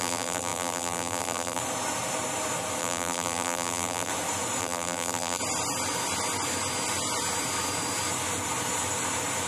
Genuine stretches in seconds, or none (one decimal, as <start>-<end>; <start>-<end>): 1.6-2.8; 4.1-4.6; 5.4-9.5